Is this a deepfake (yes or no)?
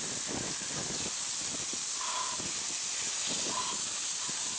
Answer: no